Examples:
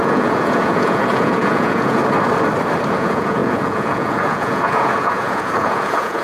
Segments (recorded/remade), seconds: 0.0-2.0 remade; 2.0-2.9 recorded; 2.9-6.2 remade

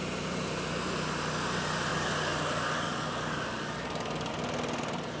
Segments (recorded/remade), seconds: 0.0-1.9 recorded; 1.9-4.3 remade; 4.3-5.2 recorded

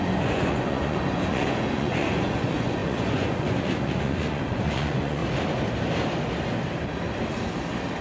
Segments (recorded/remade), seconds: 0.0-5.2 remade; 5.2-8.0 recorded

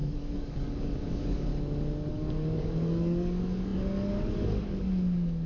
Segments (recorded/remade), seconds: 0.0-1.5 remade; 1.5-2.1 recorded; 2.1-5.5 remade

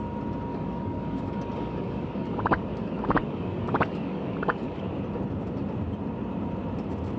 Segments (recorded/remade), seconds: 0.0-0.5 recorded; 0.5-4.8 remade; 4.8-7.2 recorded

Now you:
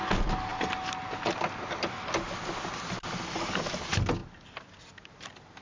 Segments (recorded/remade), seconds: 0.0-5.6 recorded

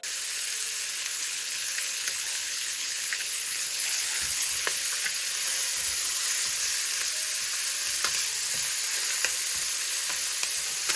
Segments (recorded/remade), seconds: 0.0-1.0 recorded; 1.0-5.0 remade; 5.0-11.0 recorded